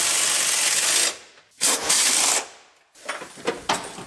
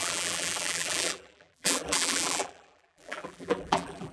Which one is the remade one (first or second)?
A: second